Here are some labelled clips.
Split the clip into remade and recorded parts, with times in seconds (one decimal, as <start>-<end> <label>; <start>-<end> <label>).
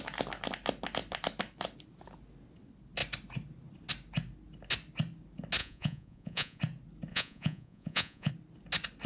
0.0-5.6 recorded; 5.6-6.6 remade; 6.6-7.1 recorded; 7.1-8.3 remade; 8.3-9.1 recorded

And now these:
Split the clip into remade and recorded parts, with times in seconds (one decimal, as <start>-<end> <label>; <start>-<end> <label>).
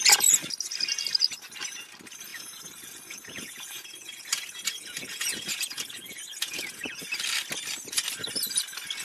0.0-2.3 recorded; 2.3-7.0 remade; 7.0-9.0 recorded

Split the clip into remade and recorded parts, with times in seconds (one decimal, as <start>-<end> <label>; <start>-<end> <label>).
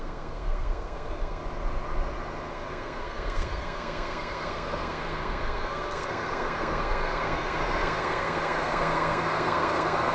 0.0-1.4 remade; 1.4-2.5 recorded; 2.5-10.1 remade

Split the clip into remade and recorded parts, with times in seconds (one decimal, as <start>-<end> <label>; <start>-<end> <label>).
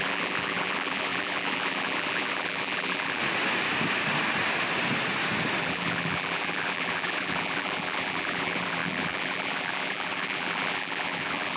0.0-3.2 remade; 3.2-5.6 recorded; 5.6-11.6 remade